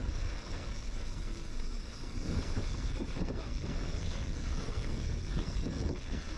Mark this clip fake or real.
fake